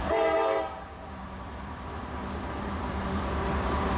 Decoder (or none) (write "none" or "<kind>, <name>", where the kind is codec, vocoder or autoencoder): vocoder, BigVGAN v2